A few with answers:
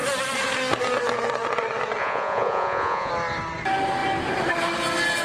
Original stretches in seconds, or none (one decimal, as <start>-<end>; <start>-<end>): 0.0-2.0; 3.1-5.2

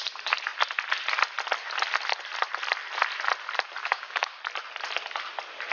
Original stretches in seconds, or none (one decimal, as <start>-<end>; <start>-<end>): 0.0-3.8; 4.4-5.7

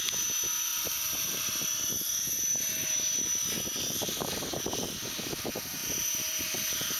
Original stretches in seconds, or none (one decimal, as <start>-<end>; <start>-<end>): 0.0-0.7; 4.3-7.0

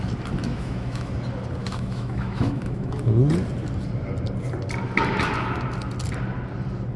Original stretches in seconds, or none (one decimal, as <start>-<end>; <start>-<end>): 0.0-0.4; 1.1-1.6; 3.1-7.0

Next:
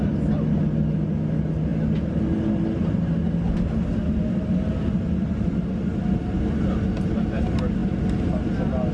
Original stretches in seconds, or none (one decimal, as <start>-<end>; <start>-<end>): 0.0-8.9

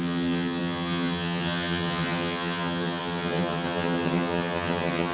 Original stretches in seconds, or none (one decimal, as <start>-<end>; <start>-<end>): none

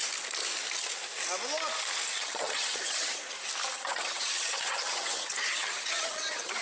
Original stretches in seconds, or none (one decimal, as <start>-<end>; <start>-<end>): 0.0-2.2; 3.2-3.7

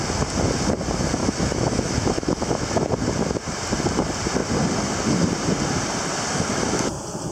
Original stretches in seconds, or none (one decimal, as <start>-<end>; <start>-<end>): 0.0-1.2; 2.8-7.3